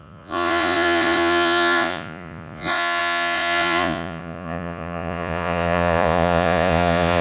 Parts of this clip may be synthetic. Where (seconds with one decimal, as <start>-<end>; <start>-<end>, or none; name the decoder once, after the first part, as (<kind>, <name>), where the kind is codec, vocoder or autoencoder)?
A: 0.0-7.2 (vocoder, Vocos)